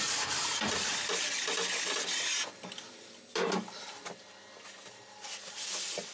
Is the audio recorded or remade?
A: recorded